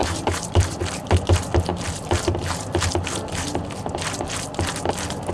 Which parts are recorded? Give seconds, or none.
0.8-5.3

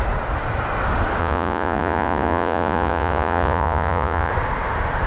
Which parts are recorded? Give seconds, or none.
0.0-1.2; 4.3-5.1

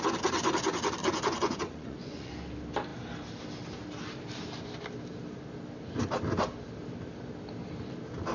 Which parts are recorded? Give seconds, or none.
0.0-1.0; 2.3-8.3